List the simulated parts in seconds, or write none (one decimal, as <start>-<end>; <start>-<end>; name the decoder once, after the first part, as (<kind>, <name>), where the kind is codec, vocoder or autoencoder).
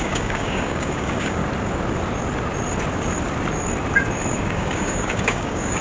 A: 0.0-1.4 (codec, DAC); 4.4-5.8